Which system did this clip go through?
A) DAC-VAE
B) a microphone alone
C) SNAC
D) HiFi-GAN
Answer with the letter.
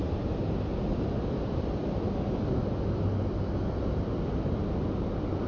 B